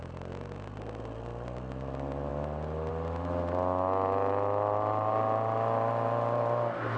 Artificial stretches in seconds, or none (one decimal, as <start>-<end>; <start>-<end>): none